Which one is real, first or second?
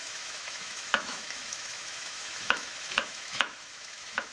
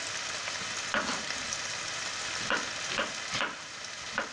second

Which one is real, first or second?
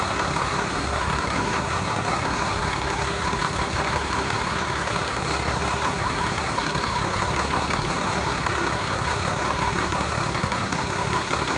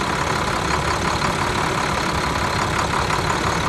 second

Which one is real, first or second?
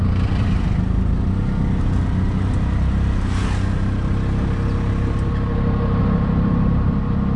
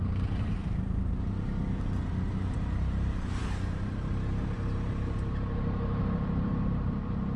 first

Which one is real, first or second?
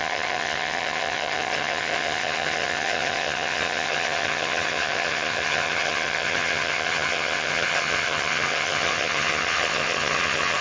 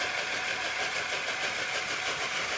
second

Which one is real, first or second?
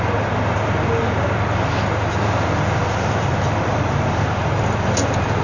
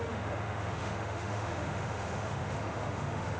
first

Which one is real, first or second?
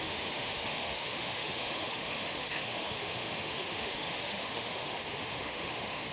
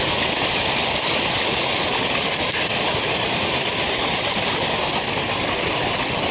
second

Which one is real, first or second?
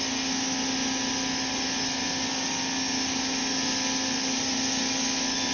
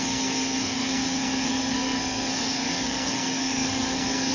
first